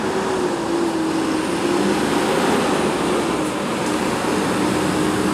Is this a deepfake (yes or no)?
no